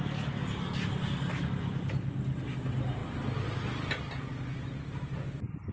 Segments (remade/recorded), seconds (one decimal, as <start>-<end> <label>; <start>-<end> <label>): 0.0-5.7 recorded